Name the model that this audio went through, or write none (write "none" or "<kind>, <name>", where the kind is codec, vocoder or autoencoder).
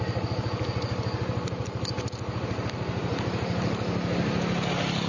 none